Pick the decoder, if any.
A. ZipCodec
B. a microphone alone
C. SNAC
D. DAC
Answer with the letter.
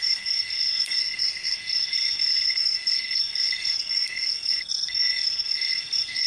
C